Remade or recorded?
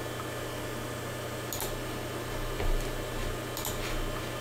recorded